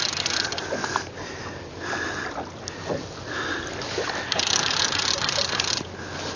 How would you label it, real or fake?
real